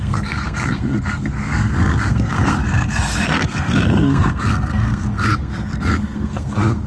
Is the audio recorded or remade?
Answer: remade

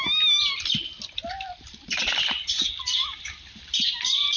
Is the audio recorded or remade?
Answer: recorded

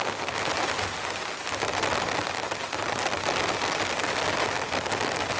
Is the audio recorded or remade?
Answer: recorded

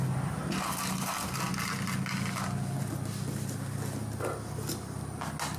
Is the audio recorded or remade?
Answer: recorded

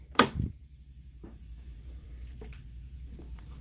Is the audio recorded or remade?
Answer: remade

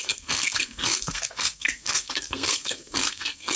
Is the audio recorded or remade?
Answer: remade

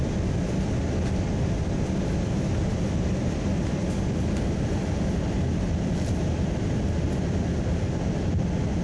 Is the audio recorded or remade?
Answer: recorded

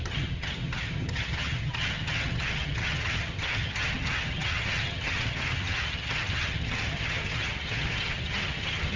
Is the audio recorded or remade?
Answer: remade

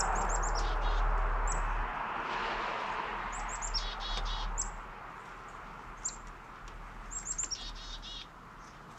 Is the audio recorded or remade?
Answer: recorded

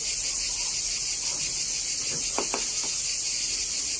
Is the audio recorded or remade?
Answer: recorded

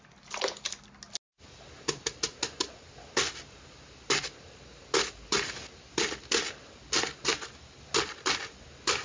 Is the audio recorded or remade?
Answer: recorded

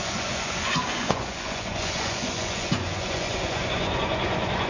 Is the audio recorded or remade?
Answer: remade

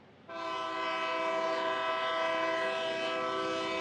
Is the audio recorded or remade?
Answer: recorded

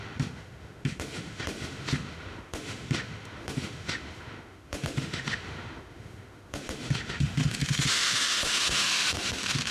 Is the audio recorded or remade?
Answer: remade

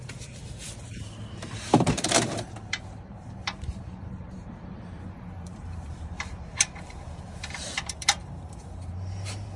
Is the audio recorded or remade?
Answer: remade